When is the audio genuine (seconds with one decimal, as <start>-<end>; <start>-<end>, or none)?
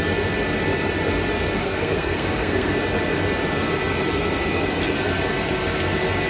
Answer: 0.0-1.6; 2.7-6.3